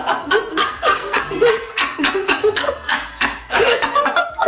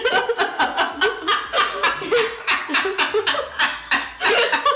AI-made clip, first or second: first